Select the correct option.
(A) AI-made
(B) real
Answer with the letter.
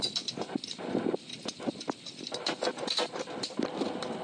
B